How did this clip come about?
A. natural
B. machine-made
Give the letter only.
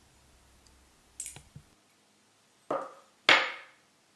A